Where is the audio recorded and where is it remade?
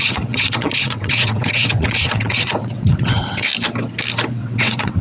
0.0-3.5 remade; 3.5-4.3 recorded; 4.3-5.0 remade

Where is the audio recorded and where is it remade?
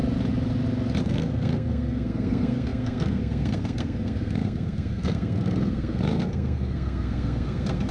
0.0-1.0 recorded; 1.0-7.9 remade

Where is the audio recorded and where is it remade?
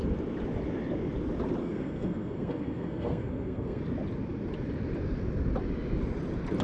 0.0-1.6 recorded; 1.6-3.8 remade; 3.8-6.6 recorded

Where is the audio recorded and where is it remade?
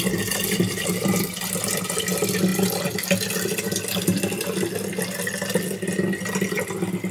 0.0-7.1 recorded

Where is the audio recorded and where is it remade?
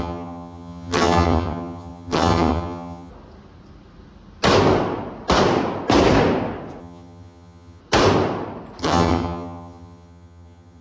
0.0-3.1 remade; 3.1-6.8 recorded; 6.8-7.8 remade; 7.8-8.8 recorded; 8.8-10.8 remade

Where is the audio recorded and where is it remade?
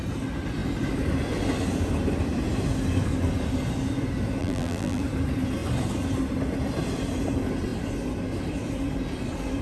0.0-4.4 recorded; 4.4-5.0 remade; 5.0-9.6 recorded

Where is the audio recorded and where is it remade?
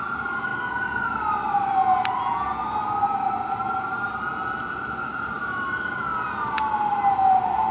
0.0-7.7 recorded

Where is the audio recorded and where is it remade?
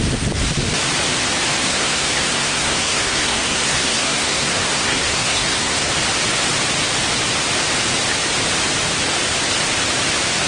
0.0-1.6 recorded; 1.6-5.9 remade; 5.9-10.5 recorded